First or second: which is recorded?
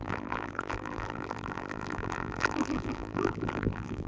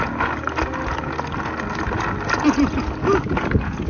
second